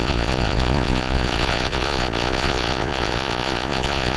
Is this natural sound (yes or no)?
no